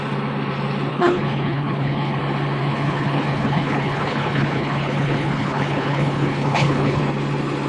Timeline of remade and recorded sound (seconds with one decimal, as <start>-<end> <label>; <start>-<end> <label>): 0.0-0.9 recorded; 0.9-2.2 remade; 2.2-2.6 recorded; 2.6-7.0 remade; 7.0-7.7 recorded